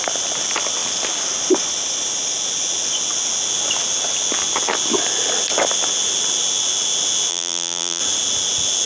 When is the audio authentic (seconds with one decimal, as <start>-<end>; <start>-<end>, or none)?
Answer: 0.0-7.3; 8.0-8.9